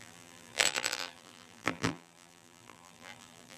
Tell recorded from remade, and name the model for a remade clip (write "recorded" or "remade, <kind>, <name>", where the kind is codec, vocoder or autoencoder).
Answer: remade, vocoder, BigVGAN v2